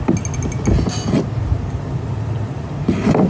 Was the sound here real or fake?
real